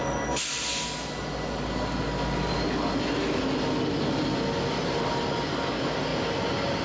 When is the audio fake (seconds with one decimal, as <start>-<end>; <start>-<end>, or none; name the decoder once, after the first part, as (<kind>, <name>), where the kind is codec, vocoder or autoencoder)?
none